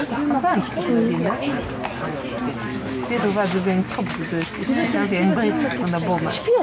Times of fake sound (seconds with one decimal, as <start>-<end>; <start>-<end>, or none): 0.0-0.6